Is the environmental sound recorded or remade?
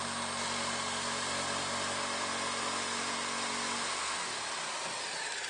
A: recorded